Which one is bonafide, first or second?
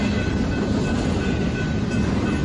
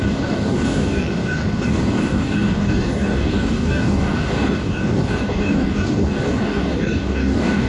first